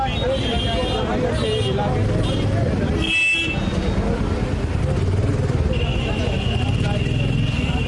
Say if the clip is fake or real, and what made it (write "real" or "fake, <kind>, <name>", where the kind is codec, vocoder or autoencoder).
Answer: real